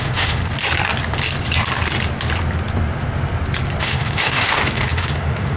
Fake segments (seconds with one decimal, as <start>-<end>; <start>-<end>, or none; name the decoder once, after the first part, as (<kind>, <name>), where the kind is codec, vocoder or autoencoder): 0.0-0.4 (autoencoder, DAC-VAE); 3.8-5.6